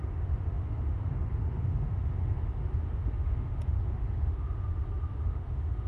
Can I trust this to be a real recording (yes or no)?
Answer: no